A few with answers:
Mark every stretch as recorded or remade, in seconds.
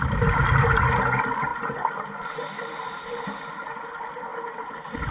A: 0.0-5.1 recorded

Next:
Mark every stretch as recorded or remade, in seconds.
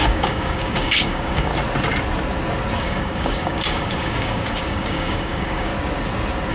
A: 0.0-1.5 remade; 1.5-2.8 recorded; 2.8-5.7 remade; 5.7-6.5 recorded